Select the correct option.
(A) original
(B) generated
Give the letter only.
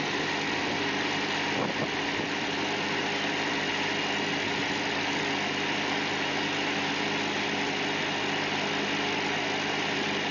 A